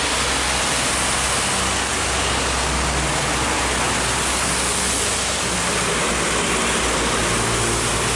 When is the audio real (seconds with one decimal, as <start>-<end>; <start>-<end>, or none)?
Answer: 0.0-8.2

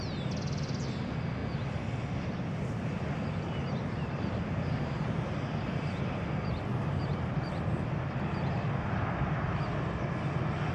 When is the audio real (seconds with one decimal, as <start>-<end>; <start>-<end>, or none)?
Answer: 0.0-3.6; 6.0-7.0; 7.5-10.7